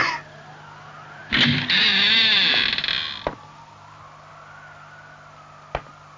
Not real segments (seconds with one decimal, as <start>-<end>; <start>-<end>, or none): none